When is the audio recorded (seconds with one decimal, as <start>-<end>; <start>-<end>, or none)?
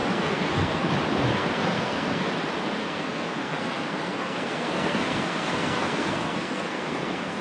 0.9-1.3; 2.3-2.8